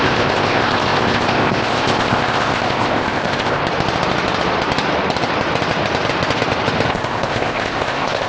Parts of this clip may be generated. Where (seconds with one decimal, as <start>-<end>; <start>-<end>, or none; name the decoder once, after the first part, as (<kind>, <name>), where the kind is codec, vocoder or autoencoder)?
0.0-3.6 (codec, ZipCodec); 6.9-8.3